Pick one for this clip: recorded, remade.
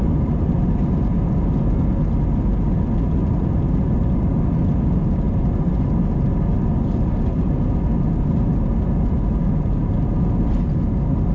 recorded